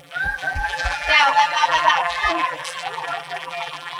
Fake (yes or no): yes